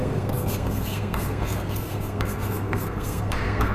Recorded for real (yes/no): no